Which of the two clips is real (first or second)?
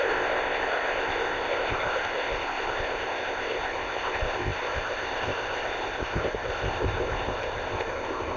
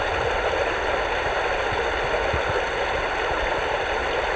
second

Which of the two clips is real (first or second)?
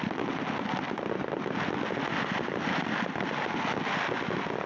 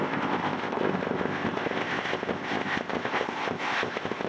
first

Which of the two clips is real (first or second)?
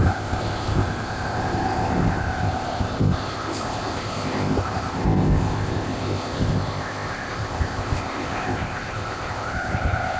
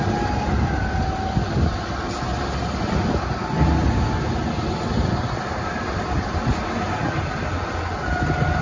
second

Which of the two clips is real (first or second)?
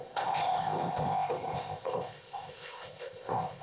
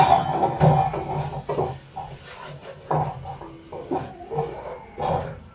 second